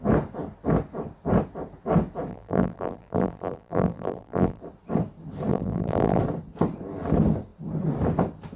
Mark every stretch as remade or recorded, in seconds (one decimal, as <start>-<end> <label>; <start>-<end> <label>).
0.0-2.3 recorded; 2.3-4.6 remade; 4.6-5.5 recorded; 5.5-6.2 remade; 6.2-8.6 recorded